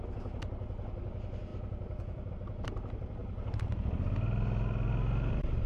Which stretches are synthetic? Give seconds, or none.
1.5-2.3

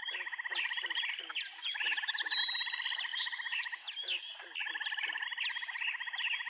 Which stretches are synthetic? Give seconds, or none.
none

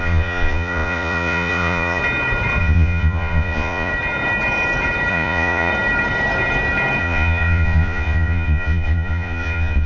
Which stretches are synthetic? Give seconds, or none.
0.0-2.0; 2.6-3.9; 5.1-5.7; 7.0-9.9

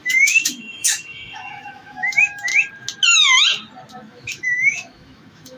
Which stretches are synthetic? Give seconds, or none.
0.0-2.5; 3.9-5.6

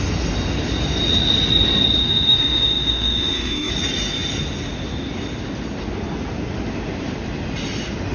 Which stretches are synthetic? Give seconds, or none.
2.0-3.7

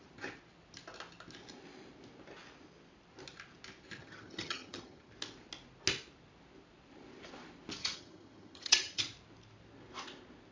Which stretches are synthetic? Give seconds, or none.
4.0-5.1; 7.8-9.0